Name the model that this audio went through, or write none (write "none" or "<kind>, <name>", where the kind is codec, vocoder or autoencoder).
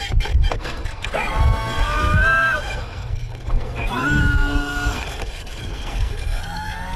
codec, SNAC